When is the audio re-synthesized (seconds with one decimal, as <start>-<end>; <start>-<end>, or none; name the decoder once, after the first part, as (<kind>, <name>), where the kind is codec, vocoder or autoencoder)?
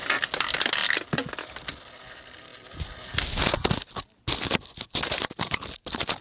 2.0-2.5 (vocoder, BigVGAN v2); 4.6-6.2